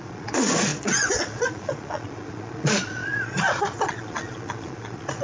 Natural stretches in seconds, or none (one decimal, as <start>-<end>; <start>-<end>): none